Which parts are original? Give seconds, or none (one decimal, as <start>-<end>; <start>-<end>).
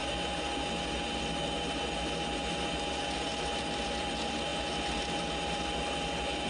0.0-3.6; 4.5-6.5